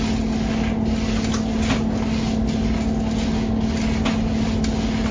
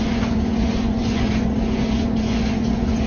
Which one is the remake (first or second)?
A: second